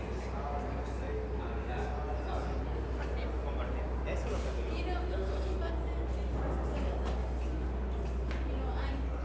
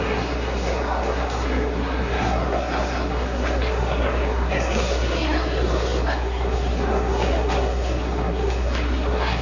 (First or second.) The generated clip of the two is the second